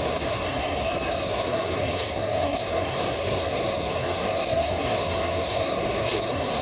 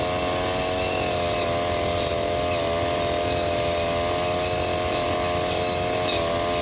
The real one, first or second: second